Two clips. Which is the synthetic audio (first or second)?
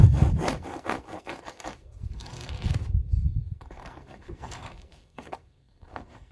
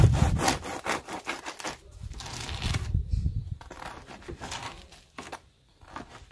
first